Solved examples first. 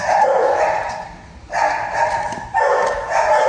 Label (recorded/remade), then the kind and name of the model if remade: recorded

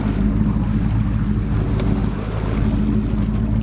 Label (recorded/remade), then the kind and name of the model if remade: recorded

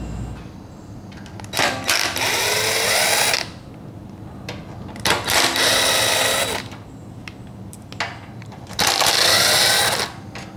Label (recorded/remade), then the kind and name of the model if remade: recorded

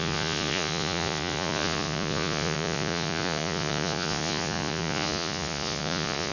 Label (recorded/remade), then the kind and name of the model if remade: remade, vocoder, Vocos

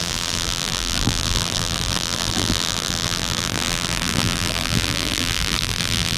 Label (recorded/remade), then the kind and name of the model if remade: remade, vocoder, BigVGAN v2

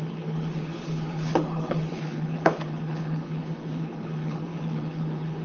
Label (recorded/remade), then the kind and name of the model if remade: remade, codec, HILCodec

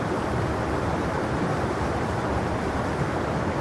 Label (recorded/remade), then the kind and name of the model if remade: recorded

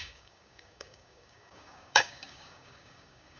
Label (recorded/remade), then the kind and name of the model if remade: remade, codec, DAC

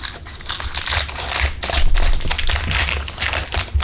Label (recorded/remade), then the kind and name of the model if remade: recorded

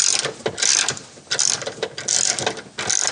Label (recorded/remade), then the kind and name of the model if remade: recorded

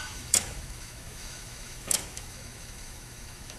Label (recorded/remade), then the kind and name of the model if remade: remade, autoencoder, DAC-VAE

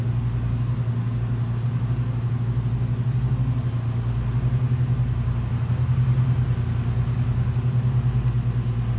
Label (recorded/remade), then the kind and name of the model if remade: recorded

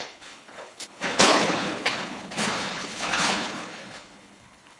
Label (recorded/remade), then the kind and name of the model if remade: remade, codec, HILCodec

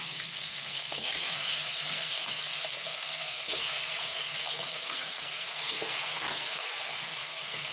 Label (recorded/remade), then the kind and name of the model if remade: remade, codec, SNAC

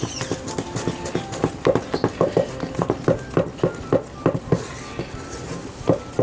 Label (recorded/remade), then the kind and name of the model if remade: recorded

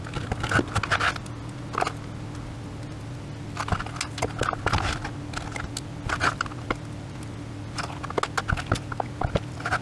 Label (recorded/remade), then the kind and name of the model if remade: recorded